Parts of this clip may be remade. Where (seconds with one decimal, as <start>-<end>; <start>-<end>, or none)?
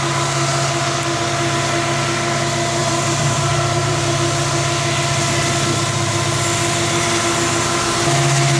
2.8-4.0